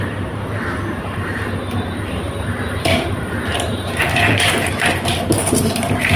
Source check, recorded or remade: remade